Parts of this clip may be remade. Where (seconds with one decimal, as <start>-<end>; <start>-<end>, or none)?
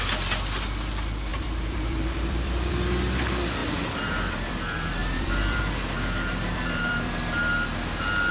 1.3-2.7; 3.6-4.5; 5.0-5.6; 6.3-7.8